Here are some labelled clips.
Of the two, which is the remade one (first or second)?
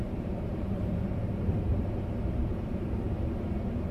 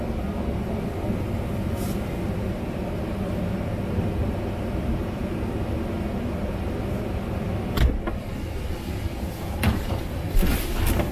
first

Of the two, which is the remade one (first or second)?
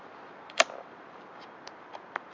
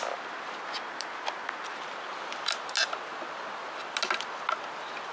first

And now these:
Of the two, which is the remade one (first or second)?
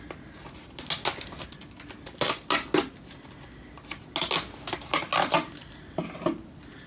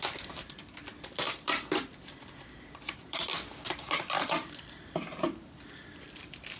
second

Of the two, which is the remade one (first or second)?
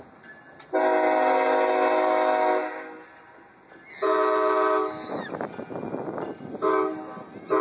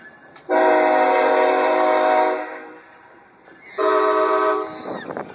second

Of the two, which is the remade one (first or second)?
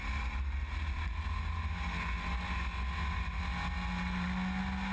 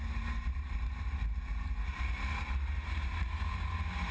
second